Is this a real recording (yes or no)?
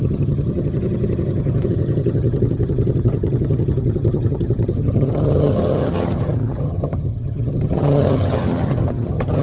no